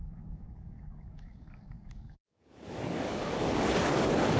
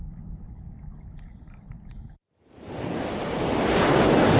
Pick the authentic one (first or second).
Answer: second